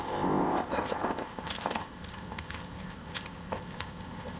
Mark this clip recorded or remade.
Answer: remade